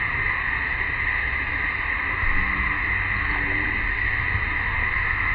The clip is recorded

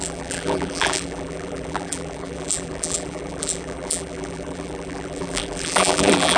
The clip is remade